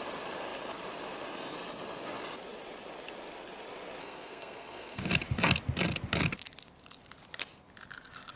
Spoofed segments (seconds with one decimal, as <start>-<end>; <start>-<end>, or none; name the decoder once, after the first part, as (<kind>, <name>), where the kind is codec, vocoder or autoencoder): 4.0-5.0 (codec, SNAC)